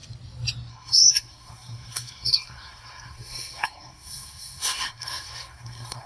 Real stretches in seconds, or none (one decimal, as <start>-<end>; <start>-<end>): 0.0-0.7